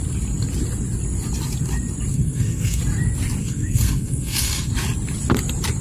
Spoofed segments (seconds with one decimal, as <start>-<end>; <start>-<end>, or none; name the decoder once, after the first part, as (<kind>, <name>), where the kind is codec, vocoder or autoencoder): 2.1-2.8 (codec, SNAC); 3.4-4.7